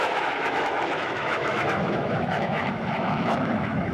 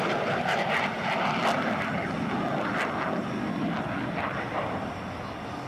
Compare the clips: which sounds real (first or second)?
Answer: second